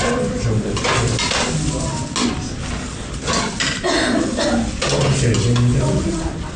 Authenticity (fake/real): real